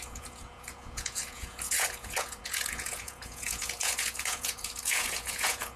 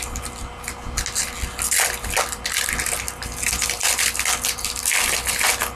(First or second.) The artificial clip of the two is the first